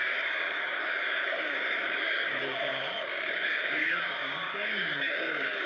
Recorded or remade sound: remade